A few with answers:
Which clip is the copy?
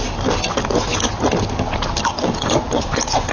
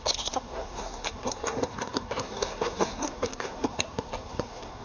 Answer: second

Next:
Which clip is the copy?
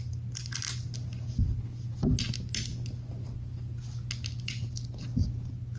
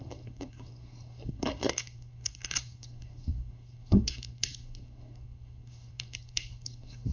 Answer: second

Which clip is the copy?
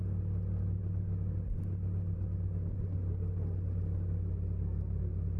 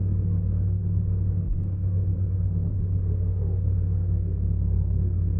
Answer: second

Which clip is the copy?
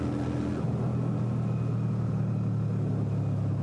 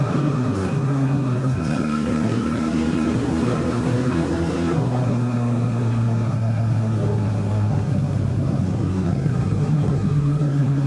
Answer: second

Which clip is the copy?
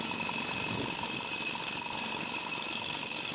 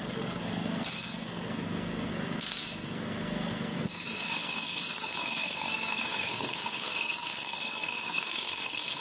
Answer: second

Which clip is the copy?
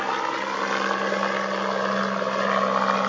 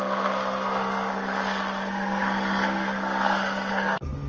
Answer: second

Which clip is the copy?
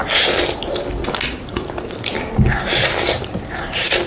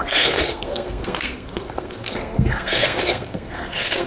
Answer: second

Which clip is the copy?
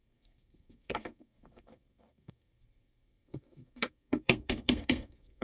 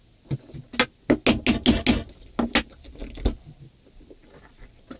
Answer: first